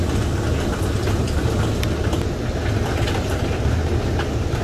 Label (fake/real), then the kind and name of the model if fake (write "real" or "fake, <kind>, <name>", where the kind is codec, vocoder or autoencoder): real